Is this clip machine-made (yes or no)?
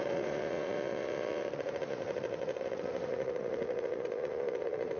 yes